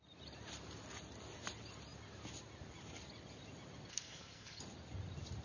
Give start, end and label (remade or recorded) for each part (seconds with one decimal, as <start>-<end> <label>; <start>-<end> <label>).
0.0-3.9 recorded; 3.9-4.6 remade; 4.6-5.4 recorded

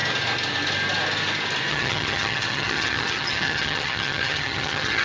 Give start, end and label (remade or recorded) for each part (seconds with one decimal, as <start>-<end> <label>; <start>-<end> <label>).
0.0-1.7 recorded; 1.7-5.0 remade

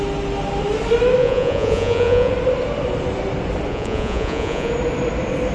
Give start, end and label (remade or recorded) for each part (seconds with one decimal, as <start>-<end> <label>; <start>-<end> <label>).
0.0-1.2 recorded; 1.2-2.3 remade; 2.3-3.7 recorded; 3.7-4.7 remade; 4.7-5.5 recorded

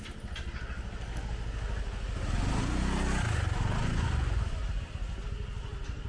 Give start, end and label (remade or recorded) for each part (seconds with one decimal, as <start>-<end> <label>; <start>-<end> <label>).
0.0-3.8 recorded; 3.8-4.6 remade; 4.6-6.1 recorded

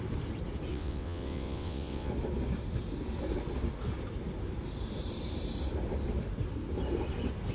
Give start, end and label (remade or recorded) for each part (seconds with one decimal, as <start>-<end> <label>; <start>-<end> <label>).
0.0-0.7 recorded; 0.7-2.1 remade; 2.1-7.5 recorded

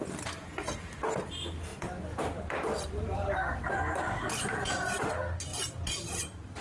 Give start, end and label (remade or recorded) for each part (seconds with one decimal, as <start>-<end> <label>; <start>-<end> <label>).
0.0-6.6 recorded

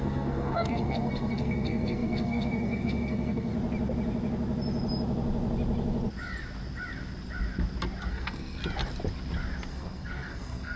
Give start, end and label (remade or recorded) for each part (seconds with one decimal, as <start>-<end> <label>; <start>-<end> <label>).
0.0-3.5 remade; 3.5-8.1 recorded; 8.1-8.6 remade; 8.6-9.7 recorded; 9.7-10.8 remade

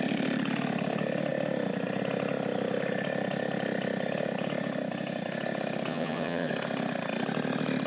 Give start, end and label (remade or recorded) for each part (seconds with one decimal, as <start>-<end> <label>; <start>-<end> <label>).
0.0-5.9 recorded; 5.9-6.5 remade; 6.5-7.9 recorded